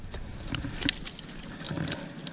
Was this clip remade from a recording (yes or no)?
no